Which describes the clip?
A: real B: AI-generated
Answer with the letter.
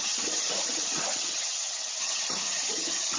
B